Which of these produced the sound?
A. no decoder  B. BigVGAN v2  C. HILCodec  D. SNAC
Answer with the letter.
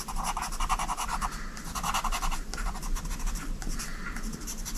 B